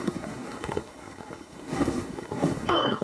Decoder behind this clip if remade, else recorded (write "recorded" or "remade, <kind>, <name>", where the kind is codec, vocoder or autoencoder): remade, codec, SNAC